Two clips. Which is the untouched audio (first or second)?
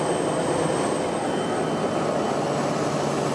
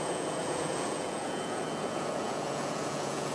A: first